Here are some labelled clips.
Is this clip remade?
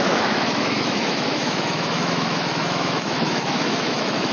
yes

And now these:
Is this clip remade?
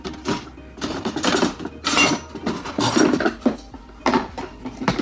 no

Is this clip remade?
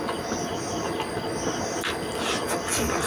no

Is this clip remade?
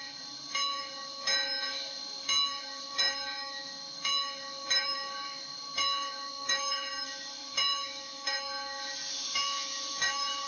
yes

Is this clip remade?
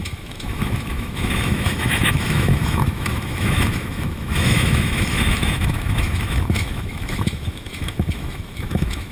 yes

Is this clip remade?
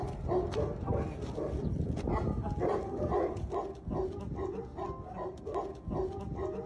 no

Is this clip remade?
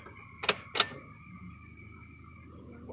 no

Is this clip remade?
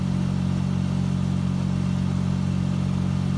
no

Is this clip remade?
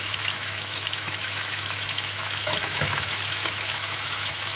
yes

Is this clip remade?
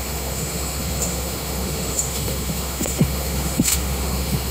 yes